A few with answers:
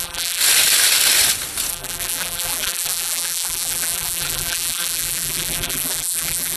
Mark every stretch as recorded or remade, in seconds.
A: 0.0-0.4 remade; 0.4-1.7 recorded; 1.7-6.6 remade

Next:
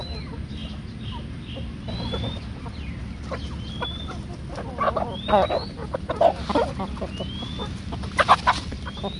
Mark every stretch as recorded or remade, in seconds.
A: 0.0-9.2 recorded